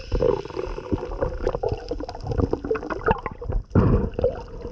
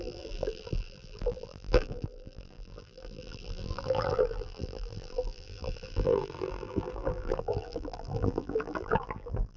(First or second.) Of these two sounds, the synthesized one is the second